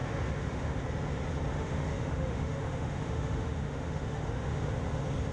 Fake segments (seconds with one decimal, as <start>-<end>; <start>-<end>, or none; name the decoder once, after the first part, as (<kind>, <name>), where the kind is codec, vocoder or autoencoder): 0.0-0.8 (autoencoder, DAC-VAE); 1.5-4.7